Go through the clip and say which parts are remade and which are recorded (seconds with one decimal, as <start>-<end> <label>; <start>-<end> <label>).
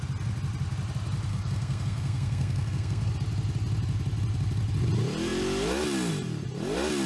0.0-1.3 recorded; 1.3-3.1 remade; 3.1-7.1 recorded